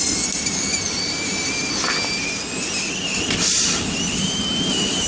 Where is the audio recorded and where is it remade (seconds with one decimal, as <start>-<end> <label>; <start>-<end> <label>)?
0.0-5.1 recorded